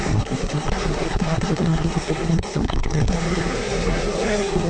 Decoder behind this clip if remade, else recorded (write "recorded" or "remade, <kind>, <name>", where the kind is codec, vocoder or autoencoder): remade, codec, SNAC